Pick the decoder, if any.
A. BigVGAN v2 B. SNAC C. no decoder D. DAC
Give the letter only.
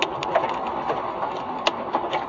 C